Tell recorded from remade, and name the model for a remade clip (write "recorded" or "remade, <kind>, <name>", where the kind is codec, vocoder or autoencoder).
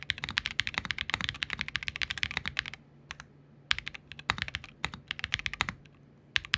recorded